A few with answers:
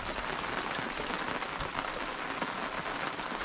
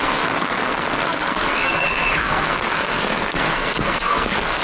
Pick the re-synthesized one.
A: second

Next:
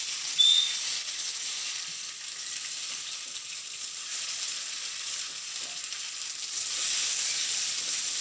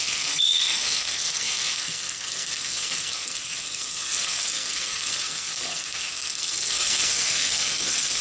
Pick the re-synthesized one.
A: second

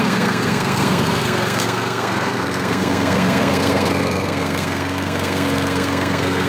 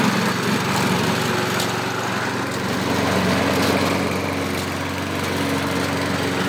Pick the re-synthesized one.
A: first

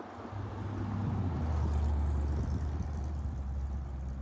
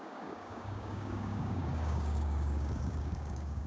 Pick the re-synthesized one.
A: second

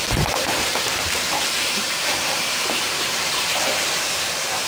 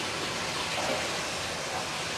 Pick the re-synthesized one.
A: first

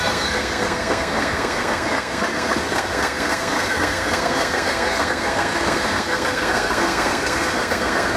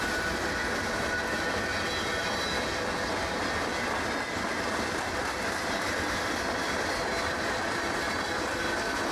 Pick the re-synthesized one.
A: first